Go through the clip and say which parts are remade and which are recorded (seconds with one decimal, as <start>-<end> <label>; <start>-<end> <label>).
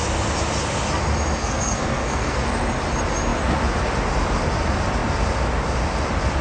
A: 0.0-1.4 recorded; 1.4-2.4 remade; 2.4-6.4 recorded